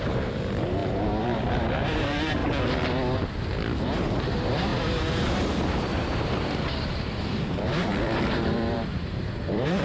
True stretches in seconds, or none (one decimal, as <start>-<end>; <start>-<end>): 2.4-3.8